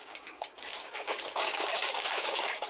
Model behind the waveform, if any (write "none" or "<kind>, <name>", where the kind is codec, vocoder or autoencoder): codec, DAC